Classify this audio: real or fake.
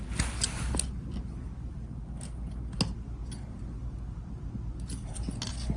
real